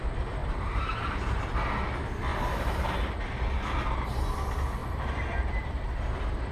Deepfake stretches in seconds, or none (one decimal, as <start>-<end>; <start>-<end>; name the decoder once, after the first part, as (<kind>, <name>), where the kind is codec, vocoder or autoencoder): 0.4-1.5 (vocoder, BigVGAN v2); 2.3-3.2; 4.8-5.9